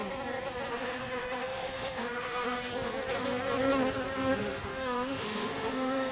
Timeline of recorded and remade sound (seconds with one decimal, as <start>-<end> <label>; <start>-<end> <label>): 0.0-0.7 recorded; 0.7-2.7 remade; 2.7-4.4 recorded; 4.4-6.1 remade